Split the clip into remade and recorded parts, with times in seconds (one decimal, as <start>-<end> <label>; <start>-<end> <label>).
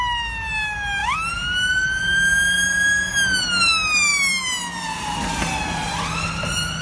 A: 0.0-4.1 recorded; 4.1-6.0 remade; 6.0-6.8 recorded